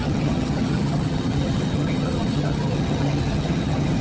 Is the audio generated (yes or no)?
yes